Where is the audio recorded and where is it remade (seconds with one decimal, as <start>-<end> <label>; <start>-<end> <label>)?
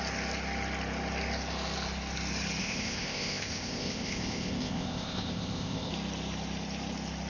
0.0-2.6 recorded; 2.6-5.9 remade; 5.9-7.3 recorded